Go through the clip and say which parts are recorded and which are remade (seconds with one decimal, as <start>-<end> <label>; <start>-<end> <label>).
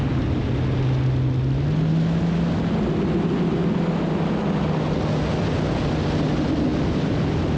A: 0.0-7.6 recorded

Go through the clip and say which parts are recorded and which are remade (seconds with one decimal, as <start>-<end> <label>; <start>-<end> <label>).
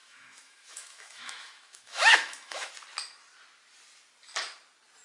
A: 0.0-2.7 remade; 2.7-5.0 recorded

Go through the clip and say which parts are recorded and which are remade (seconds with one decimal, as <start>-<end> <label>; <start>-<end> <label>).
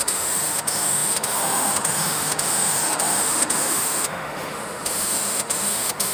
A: 0.0-6.1 remade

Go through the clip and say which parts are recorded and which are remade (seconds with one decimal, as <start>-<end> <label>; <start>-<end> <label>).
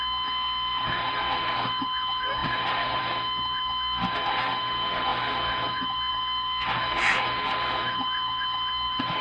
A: 0.0-9.2 remade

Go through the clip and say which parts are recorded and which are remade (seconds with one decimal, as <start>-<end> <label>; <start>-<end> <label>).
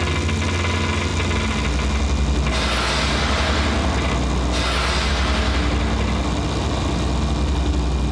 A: 0.0-8.1 recorded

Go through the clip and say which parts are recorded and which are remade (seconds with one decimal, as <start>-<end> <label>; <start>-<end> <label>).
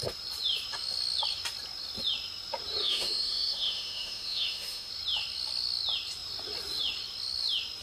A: 0.0-2.8 recorded; 2.8-4.9 remade; 4.9-7.8 recorded